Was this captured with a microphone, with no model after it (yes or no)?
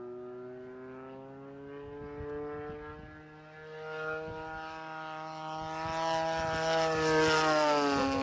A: yes